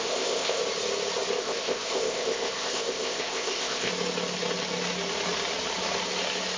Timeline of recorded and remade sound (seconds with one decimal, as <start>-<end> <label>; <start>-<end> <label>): 0.0-0.6 remade; 0.6-1.4 recorded; 1.4-3.9 remade; 3.9-6.6 recorded